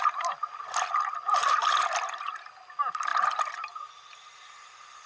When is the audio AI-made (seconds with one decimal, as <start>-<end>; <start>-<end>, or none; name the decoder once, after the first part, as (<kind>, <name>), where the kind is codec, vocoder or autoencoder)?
none